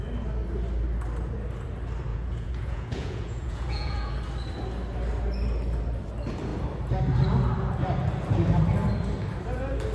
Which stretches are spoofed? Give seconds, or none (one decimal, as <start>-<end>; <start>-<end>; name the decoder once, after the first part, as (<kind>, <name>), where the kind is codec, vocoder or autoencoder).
2.1-4.1 (vocoder, Vocos)